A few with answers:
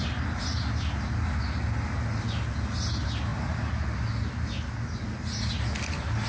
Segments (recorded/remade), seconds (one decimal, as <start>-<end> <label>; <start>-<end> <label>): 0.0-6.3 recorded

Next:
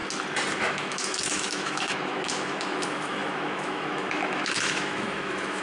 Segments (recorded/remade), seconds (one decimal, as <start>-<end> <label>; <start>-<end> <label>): 0.0-0.6 recorded; 0.6-5.6 remade

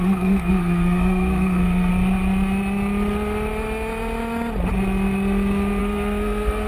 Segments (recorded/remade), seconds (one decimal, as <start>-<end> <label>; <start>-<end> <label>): 0.0-1.9 remade; 1.9-5.8 recorded; 5.8-6.7 remade